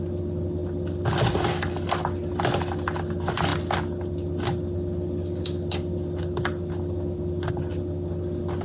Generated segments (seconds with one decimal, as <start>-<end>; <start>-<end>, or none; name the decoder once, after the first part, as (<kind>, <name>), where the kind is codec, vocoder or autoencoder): none